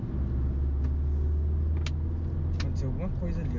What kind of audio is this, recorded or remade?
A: recorded